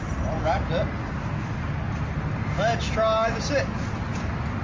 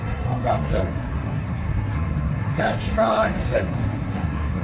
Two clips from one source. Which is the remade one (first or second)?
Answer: second